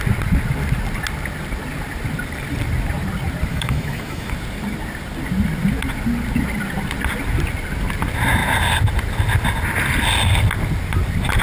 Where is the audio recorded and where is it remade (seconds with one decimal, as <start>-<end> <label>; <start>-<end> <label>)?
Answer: 0.0-3.5 recorded; 3.5-4.3 remade; 4.3-11.4 recorded